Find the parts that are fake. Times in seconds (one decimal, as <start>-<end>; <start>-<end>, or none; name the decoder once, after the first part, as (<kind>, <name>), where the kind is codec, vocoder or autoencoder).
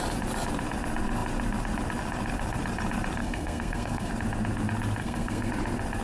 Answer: 3.2-4.1 (codec, SNAC); 5.0-5.5